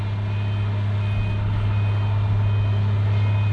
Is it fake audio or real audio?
real